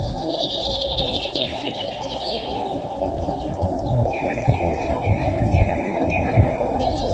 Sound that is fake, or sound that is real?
fake